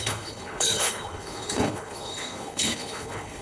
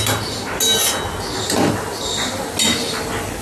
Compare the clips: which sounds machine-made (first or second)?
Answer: first